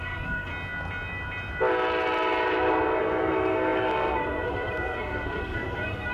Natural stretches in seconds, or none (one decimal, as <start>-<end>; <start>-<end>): 0.5-3.0